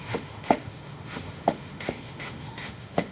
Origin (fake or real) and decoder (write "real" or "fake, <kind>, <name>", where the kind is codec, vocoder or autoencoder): fake, autoencoder, DAC-VAE